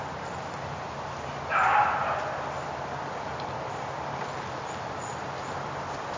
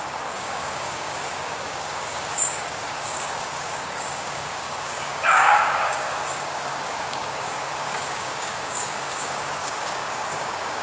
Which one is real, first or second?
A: first